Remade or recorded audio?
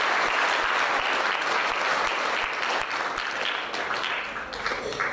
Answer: recorded